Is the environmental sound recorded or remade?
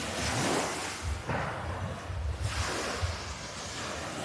recorded